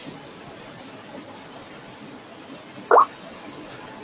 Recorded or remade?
recorded